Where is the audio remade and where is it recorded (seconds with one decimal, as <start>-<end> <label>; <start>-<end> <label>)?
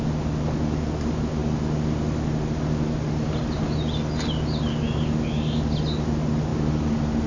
0.0-7.3 recorded